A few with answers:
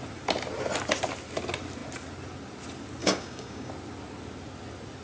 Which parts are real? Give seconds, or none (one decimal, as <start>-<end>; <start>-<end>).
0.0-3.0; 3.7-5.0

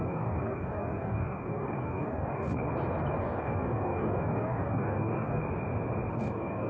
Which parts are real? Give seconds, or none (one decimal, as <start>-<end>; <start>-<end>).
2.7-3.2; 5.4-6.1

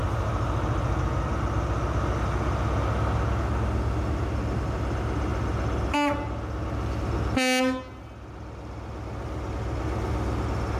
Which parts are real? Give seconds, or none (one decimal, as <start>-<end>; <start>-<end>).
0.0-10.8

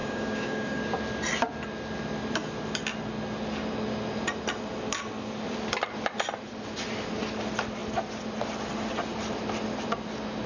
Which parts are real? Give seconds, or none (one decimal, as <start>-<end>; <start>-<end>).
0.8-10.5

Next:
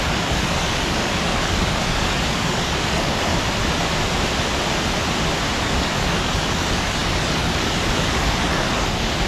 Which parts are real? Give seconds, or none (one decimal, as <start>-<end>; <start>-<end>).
3.3-5.6

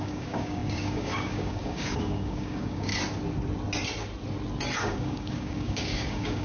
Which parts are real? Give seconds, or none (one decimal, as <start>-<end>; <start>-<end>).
2.9-4.8